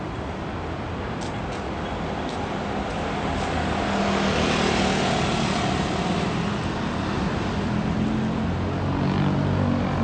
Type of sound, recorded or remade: recorded